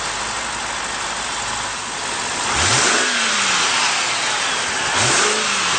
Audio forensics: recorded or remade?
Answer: recorded